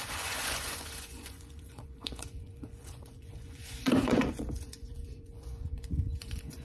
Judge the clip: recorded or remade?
remade